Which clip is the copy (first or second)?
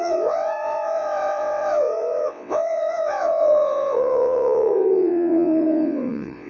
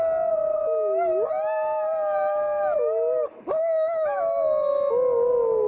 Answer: first